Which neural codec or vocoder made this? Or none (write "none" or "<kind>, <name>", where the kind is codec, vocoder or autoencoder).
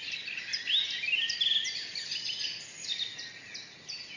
none